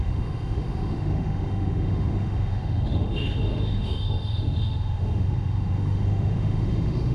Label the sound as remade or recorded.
remade